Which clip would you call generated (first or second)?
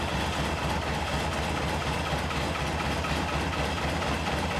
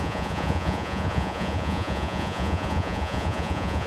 second